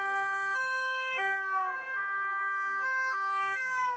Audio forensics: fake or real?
fake